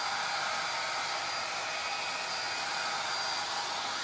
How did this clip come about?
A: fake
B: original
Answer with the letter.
B